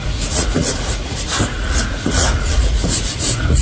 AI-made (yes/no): yes